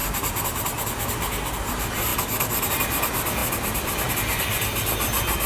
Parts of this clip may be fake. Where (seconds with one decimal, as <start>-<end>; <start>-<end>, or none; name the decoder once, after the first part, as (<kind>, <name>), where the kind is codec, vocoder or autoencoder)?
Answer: none